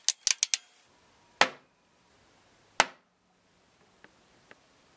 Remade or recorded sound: recorded